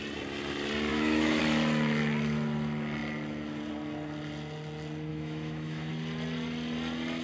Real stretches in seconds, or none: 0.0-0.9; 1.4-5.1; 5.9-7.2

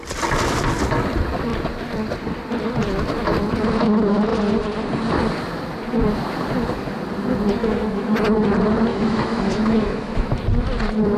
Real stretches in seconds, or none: 0.0-7.6; 8.1-8.9; 10.3-11.2

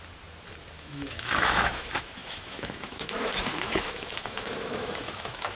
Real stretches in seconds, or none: 0.0-0.7